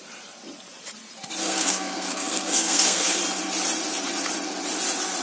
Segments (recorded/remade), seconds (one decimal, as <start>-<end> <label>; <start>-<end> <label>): 0.0-1.4 recorded; 1.4-3.2 remade; 3.2-5.2 recorded